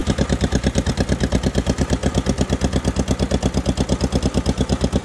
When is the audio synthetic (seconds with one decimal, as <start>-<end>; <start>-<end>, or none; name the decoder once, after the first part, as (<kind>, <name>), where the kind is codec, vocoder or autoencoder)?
0.0-2.0 (vocoder, BigVGAN v2); 4.2-5.0